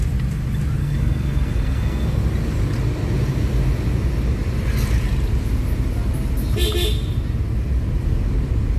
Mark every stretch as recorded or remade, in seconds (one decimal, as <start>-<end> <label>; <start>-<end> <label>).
0.0-0.8 recorded; 0.8-2.2 remade; 2.2-8.8 recorded